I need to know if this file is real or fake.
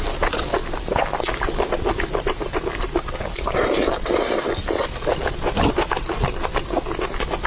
real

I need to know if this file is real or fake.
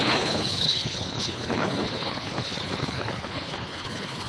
fake